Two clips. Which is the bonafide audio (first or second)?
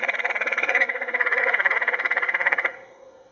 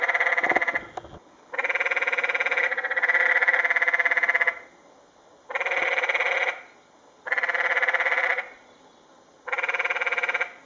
second